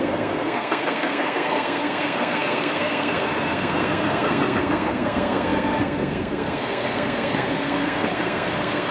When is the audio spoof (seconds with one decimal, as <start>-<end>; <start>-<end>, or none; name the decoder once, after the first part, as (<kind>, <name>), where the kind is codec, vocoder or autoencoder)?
0.0-8.9 (codec, SNAC)